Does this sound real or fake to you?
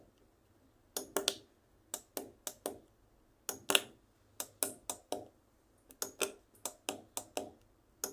real